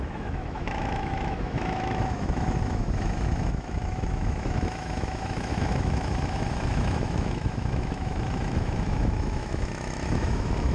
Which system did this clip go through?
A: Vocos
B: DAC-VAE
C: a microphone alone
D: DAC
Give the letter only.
B